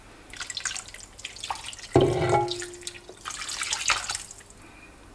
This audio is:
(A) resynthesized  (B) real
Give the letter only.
B